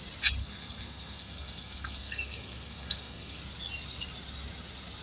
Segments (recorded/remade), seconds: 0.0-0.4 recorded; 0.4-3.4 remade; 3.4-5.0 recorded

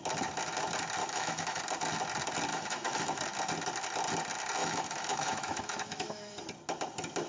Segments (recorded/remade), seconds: 0.0-1.0 recorded; 1.0-1.6 remade; 1.6-2.5 recorded; 2.5-3.2 remade; 3.2-4.6 recorded; 4.6-6.3 remade; 6.3-7.3 recorded

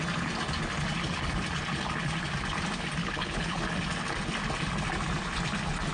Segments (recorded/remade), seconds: 0.0-3.0 recorded; 3.0-3.6 remade; 3.6-5.9 recorded

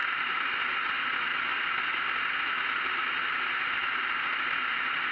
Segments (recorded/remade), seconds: 0.0-5.1 recorded

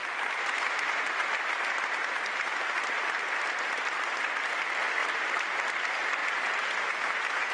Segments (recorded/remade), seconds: 0.0-6.2 recorded; 6.2-7.5 remade